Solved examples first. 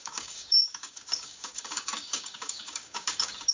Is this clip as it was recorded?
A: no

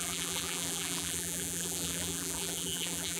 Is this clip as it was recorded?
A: no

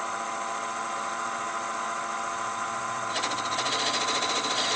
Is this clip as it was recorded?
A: no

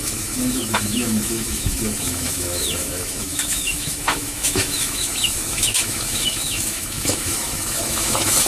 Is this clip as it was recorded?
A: no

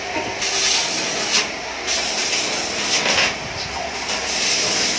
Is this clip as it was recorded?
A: yes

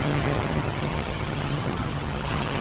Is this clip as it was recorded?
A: no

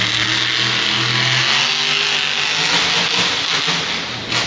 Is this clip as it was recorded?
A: yes